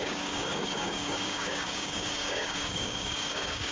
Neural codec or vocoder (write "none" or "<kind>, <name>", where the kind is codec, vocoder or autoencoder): codec, DAC